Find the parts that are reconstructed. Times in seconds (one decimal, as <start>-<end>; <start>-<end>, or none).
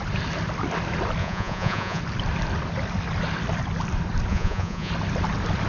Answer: 1.2-2.0; 4.3-4.9